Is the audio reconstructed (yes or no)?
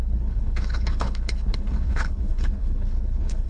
yes